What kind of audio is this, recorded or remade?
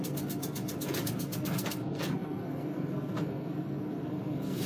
remade